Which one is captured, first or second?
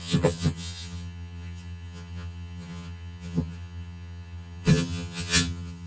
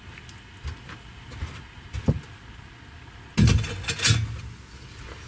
second